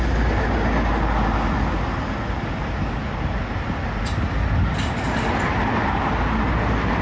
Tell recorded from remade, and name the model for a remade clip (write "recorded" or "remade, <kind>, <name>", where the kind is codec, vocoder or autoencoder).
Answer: recorded